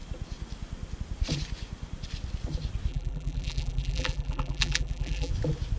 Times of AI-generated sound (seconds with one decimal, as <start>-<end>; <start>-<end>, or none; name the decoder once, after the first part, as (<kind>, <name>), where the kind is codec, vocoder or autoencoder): 2.9-5.3 (vocoder, BigVGAN v2)